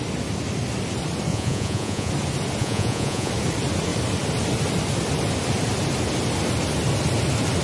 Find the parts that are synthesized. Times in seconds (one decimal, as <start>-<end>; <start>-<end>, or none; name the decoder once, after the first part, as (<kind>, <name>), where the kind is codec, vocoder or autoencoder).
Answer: 1.3-2.1 (vocoder, Vocos); 2.6-3.3